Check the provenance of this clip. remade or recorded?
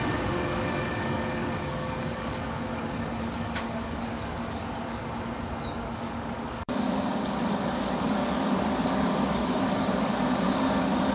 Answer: remade